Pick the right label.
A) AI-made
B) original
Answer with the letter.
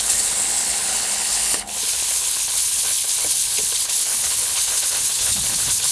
A